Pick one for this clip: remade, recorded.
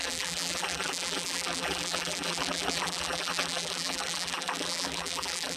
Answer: remade